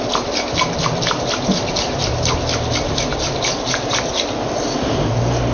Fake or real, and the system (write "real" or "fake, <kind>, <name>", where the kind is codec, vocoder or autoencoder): real